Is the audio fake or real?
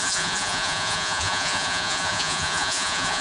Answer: fake